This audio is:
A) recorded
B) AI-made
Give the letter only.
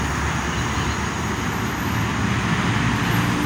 A